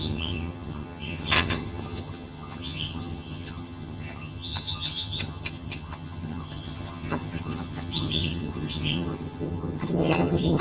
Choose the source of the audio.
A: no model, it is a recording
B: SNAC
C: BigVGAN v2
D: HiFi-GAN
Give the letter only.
D